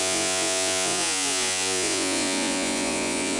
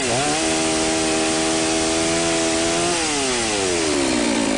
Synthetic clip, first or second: first